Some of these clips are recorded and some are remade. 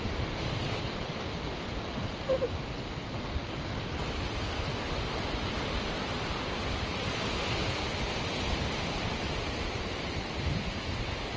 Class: recorded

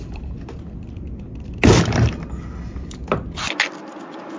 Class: recorded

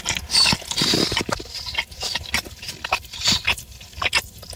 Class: recorded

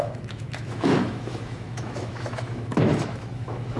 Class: remade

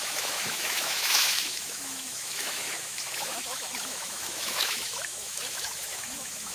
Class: remade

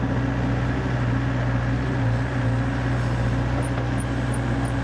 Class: recorded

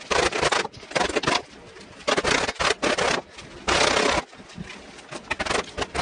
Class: recorded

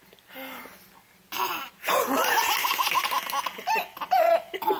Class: recorded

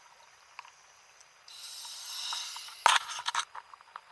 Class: recorded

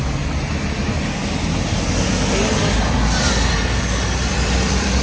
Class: recorded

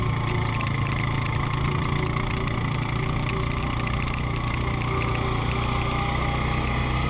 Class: recorded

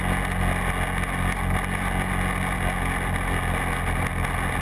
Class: recorded